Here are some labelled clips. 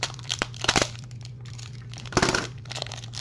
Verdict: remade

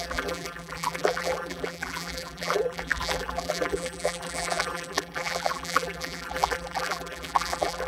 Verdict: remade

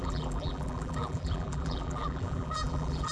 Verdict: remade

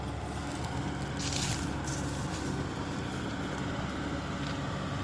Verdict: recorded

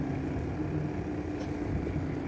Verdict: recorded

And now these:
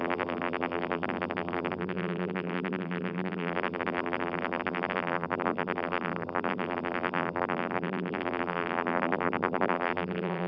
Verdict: remade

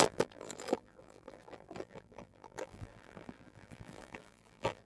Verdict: remade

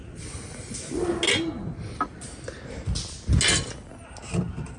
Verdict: recorded